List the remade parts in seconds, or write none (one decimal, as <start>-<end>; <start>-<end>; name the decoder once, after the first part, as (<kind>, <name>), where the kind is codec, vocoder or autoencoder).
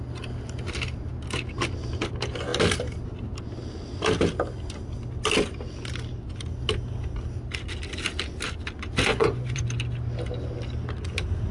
9.1-9.6 (vocoder, Vocos)